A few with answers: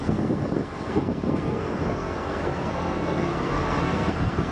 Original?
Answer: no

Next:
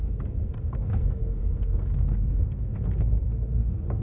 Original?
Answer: no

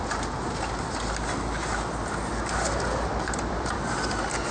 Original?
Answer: yes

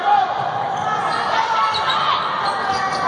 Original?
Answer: yes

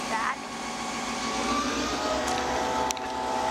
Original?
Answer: yes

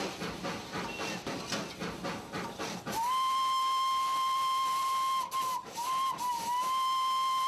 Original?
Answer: yes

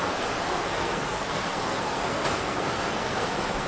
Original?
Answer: no